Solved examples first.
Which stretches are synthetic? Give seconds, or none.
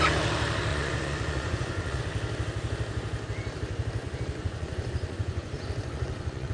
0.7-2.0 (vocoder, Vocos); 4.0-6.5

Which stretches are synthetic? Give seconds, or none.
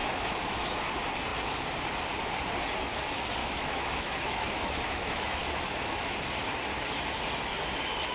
0.0-0.9 (autoencoder, DAC-VAE); 3.4-6.2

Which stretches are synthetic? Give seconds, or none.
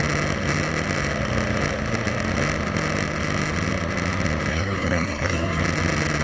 4.5-5.6 (codec, SNAC)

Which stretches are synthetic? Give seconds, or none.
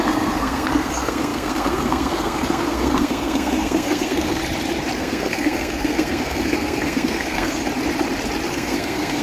0.0-4.4 (codec, SNAC); 5.0-7.6; 8.5-9.2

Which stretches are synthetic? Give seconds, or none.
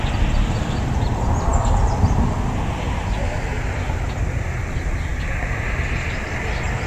none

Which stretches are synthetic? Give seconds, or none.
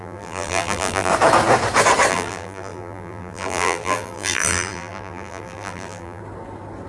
0.0-1.1 (vocoder, BigVGAN v2); 2.1-6.2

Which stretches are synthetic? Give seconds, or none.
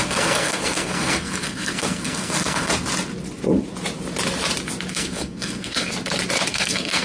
0.0-2.7 (codec, SNAC); 4.9-5.9; 6.5-7.0